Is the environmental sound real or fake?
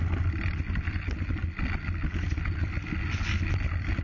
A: real